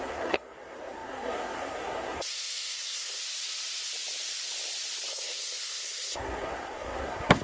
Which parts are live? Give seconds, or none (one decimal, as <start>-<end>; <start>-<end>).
3.2-5.1